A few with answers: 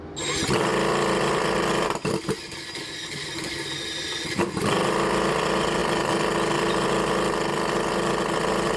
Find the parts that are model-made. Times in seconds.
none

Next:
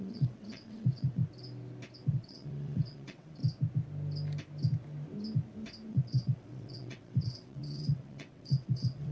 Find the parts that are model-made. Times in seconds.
0.0-1.2 (vocoder, WaveNeXt); 2.1-3.4; 5.9-9.1

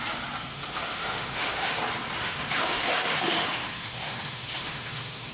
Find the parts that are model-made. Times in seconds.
0.5-1.8 (autoencoder, DAC-VAE); 2.2-5.3

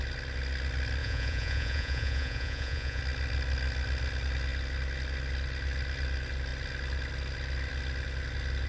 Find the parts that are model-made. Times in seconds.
1.0-3.0 (vocoder, Vocos)

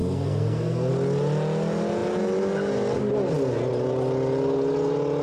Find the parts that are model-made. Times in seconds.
0.0-0.9 (codec, SNAC)

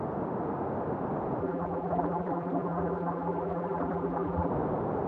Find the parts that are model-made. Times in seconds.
1.4-4.5 (vocoder, BigVGAN v2)

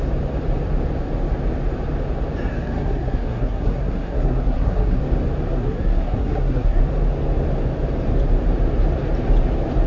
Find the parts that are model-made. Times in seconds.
2.5-5.0 (codec, SNAC); 5.5-6.8

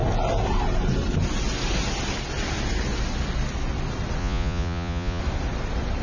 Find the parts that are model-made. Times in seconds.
4.2-5.2 (vocoder, Vocos)